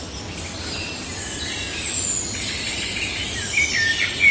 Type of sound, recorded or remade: recorded